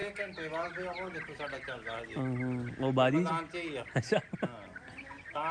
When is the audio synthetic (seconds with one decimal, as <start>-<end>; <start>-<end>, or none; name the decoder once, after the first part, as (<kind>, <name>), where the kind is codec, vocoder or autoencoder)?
none